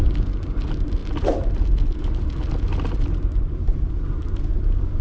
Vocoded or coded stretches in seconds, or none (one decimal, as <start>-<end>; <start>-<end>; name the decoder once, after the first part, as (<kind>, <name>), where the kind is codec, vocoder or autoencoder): none